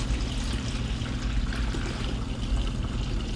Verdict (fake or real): real